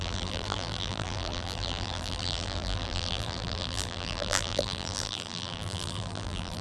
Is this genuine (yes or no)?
no